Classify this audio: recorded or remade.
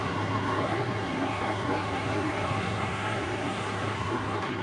remade